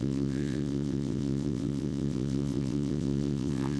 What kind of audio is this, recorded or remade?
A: remade